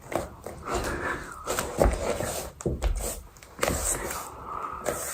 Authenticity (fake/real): real